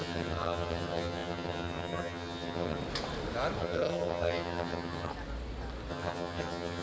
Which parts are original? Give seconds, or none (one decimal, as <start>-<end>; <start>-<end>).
2.8-3.6; 5.1-5.9